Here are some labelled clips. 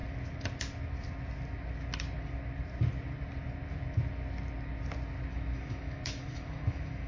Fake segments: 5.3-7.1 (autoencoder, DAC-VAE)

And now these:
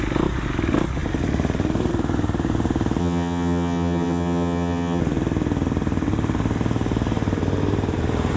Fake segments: 3.0-5.0 (vocoder, HiFi-GAN)

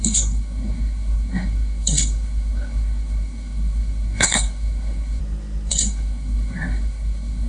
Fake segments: 0.0-5.2 (codec, SNAC); 5.7-7.5

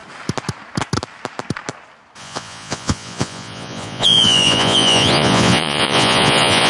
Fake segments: 2.2-6.7 (vocoder, Vocos)

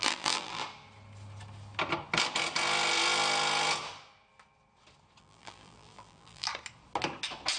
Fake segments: 0.0-0.6 (vocoder, BigVGAN v2); 5.2-6.5